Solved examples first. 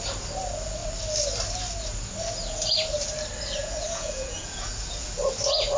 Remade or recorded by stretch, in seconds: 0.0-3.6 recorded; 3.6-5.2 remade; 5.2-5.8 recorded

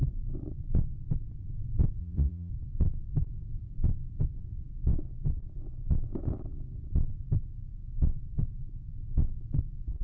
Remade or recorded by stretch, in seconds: 0.0-2.0 recorded; 2.0-2.5 remade; 2.5-10.0 recorded

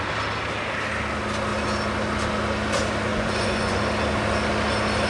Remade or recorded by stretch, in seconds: 0.0-3.1 recorded; 3.1-3.8 remade; 3.8-5.1 recorded

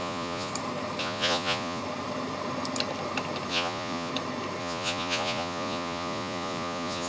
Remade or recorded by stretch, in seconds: 0.0-0.5 remade; 0.5-1.0 recorded; 1.0-1.8 remade; 1.8-3.5 recorded; 3.5-4.1 remade; 4.1-4.6 recorded; 4.6-7.1 remade

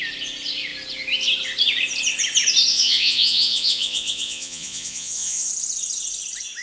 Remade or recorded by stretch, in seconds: 0.0-2.7 recorded; 2.7-5.5 remade; 5.5-6.6 recorded

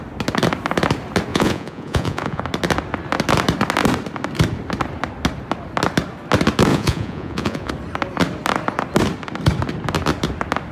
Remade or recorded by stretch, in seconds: 0.0-1.3 recorded; 1.3-2.4 remade; 2.4-6.7 recorded; 6.7-7.7 remade; 7.7-10.7 recorded